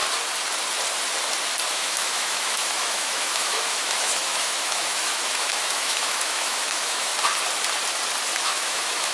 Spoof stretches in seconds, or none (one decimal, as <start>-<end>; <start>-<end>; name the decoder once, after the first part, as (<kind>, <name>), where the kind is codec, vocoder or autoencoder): 1.7-7.1 (autoencoder, DAC-VAE); 8.4-9.1